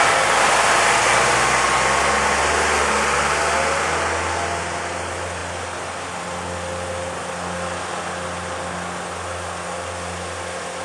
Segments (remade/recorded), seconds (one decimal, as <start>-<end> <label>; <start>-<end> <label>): 0.0-10.8 recorded